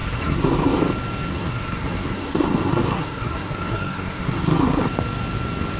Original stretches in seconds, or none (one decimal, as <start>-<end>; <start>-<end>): 0.8-1.3; 4.8-5.8